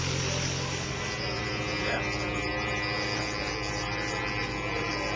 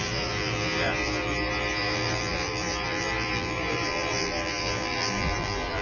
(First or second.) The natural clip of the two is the first